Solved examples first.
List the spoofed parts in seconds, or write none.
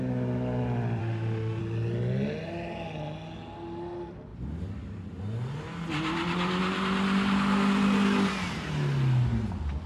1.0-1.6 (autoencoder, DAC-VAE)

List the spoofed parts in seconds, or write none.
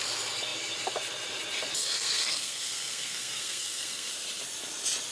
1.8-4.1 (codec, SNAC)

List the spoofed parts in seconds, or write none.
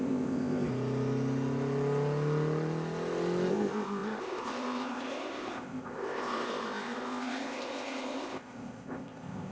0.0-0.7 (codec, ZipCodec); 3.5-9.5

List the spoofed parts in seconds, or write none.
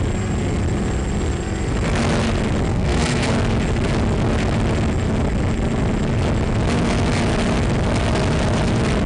2.7-3.3 (codec, SNAC)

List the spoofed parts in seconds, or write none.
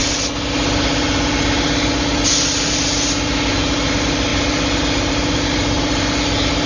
none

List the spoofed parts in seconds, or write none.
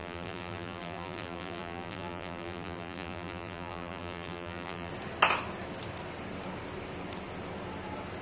0.0-4.9 (vocoder, BigVGAN v2)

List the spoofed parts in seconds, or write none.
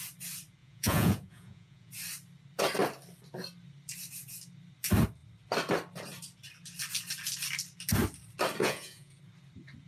0.6-1.9 (vocoder, Vocos); 8.6-9.2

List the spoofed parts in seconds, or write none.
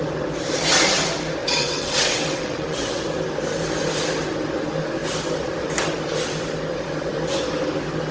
1.4-3.0 (vocoder, WaveNeXt)